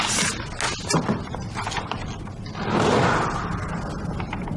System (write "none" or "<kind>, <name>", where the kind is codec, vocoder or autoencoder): none